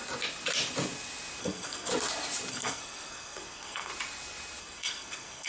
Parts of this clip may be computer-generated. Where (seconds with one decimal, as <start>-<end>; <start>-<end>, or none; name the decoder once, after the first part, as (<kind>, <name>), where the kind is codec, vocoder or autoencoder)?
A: 1.4-1.9 (codec, SNAC); 2.5-3.9; 4.6-5.5